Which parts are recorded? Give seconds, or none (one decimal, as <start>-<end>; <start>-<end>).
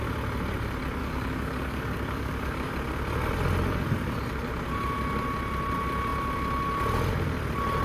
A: 0.0-1.0; 2.7-7.8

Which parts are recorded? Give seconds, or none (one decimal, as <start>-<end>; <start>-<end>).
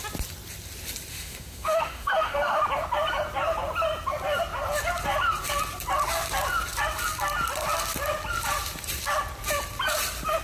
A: 0.0-1.1; 2.6-10.4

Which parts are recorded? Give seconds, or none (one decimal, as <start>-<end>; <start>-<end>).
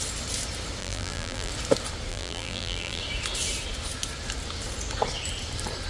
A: 0.0-0.8; 1.5-2.1; 3.0-5.9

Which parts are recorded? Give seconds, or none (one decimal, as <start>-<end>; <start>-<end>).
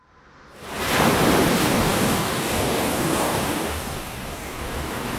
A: 0.0-1.5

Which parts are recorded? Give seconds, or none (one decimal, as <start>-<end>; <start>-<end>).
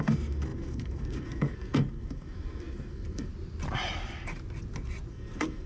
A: 3.3-5.1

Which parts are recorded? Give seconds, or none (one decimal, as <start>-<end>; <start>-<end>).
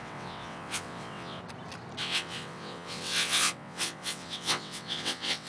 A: 1.4-2.0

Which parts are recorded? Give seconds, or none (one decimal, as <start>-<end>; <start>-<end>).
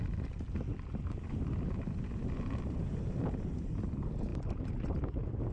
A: 0.0-5.5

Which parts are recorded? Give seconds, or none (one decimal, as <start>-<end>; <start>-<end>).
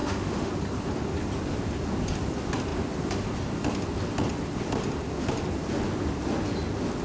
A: 0.5-7.0